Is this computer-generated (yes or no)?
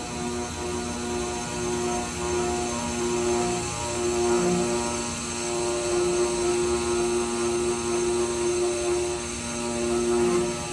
no